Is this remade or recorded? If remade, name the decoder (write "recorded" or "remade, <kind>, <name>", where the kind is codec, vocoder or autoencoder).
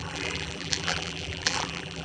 remade, vocoder, BigVGAN v2